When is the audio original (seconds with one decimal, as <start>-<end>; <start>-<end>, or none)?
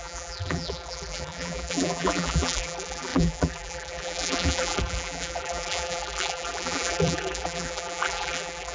none